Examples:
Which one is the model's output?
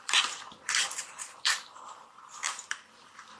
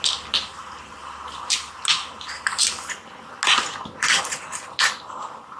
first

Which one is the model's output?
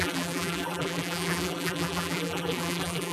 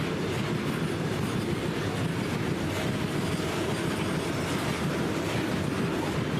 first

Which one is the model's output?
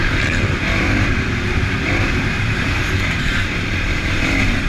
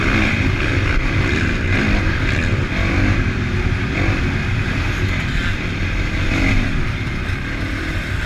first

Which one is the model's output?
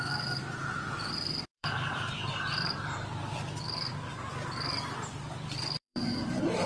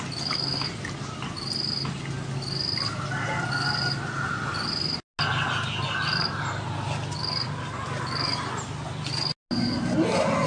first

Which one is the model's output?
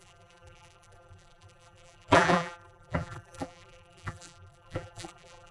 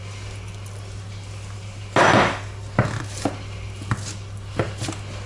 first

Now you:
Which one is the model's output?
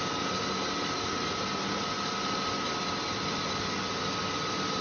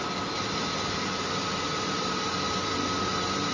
second